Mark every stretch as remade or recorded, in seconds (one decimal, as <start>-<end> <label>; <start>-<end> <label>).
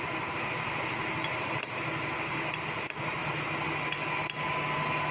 0.0-5.1 recorded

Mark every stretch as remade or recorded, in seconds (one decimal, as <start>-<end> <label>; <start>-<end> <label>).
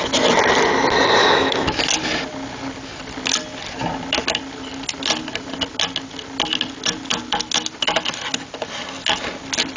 0.0-1.2 recorded; 1.2-1.8 remade; 1.8-9.8 recorded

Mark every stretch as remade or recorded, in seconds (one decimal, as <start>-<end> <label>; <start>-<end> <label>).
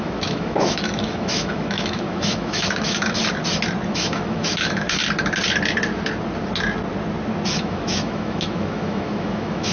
0.0-3.2 remade; 3.2-3.9 recorded; 3.9-5.0 remade; 5.0-7.5 recorded; 7.5-9.7 remade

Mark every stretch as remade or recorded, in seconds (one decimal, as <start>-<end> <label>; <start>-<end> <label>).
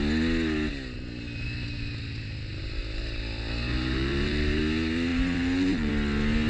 0.0-2.5 recorded; 2.5-4.6 remade; 4.6-5.1 recorded; 5.1-5.9 remade; 5.9-6.5 recorded